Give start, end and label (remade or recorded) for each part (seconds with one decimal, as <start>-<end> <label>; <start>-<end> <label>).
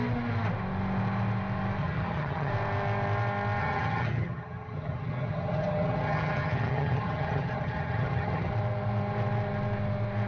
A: 0.0-1.8 recorded; 1.8-2.5 remade; 2.5-3.6 recorded; 3.6-8.5 remade; 8.5-10.3 recorded